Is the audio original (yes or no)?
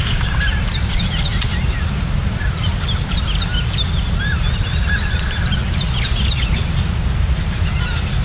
yes